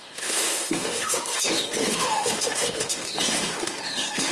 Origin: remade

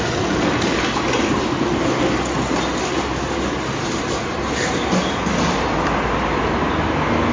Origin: recorded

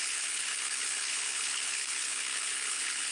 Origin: remade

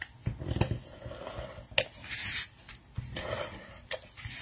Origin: recorded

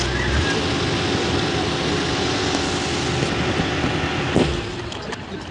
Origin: recorded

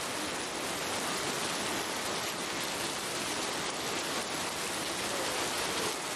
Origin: recorded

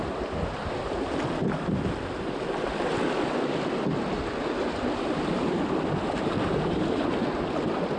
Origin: recorded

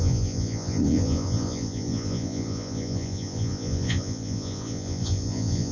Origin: remade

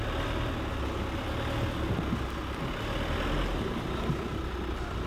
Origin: recorded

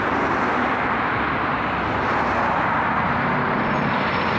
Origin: recorded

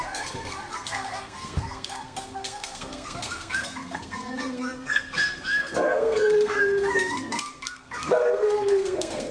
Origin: remade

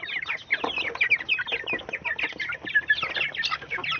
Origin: recorded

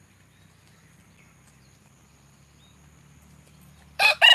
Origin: recorded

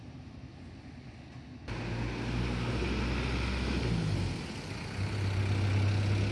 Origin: recorded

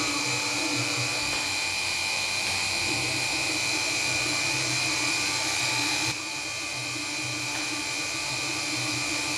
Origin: remade